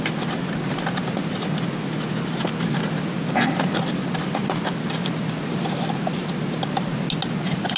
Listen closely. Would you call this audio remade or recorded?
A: recorded